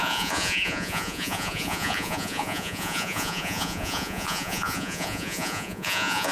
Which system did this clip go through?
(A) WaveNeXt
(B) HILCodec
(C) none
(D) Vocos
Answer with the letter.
D